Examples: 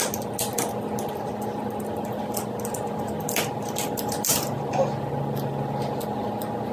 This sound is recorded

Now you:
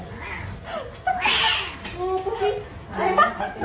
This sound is recorded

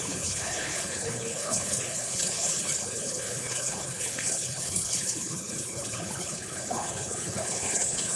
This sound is remade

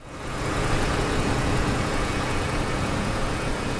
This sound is remade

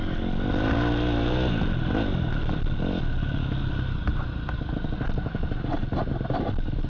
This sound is recorded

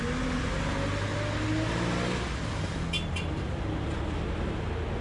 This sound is recorded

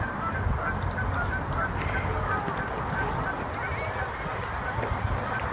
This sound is recorded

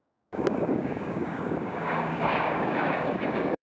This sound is remade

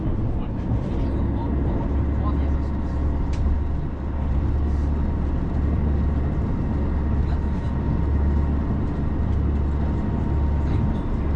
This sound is recorded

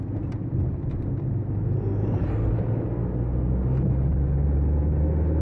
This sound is recorded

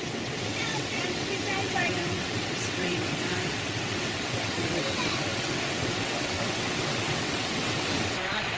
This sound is remade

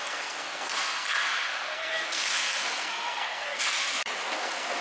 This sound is remade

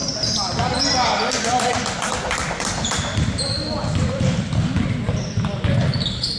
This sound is recorded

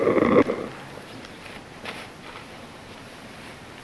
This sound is recorded